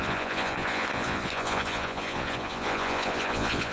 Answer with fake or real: fake